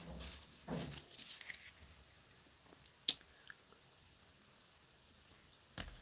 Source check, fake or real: real